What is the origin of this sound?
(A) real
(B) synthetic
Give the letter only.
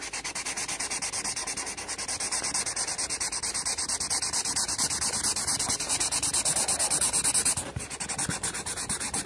A